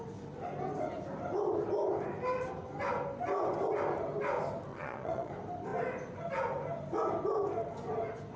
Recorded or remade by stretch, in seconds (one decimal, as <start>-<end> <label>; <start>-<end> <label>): 0.0-4.7 recorded; 4.7-5.3 remade; 5.3-8.4 recorded